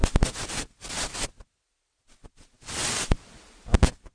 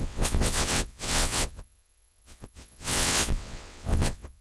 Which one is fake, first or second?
second